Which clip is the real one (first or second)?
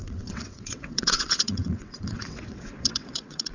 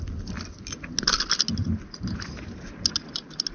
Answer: second